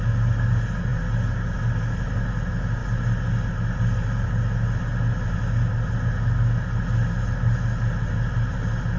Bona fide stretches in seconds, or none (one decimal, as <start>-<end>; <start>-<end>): 0.0-9.0